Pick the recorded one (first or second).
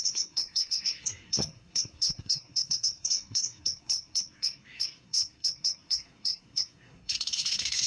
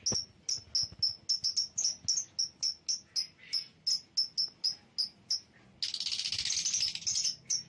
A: second